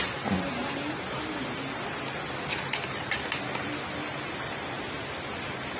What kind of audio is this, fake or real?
real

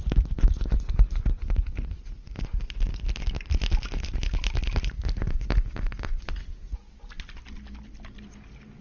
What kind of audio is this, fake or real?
real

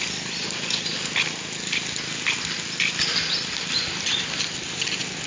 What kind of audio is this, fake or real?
real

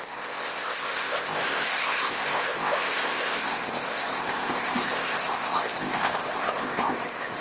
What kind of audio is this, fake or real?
fake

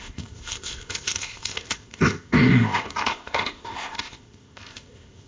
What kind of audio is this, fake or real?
fake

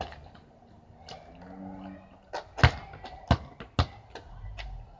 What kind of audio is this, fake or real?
real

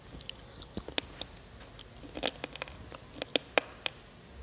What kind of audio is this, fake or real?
real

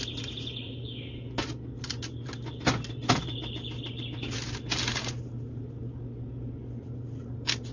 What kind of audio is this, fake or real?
real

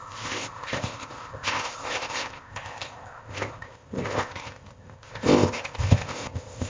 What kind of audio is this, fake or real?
fake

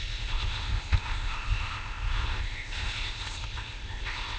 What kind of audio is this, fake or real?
fake